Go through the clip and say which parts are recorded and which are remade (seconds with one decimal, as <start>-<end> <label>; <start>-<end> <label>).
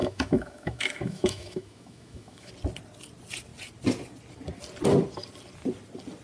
0.0-2.5 remade; 2.5-6.2 recorded